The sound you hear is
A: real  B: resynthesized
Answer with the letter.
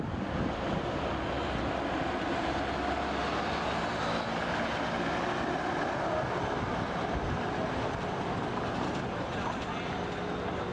A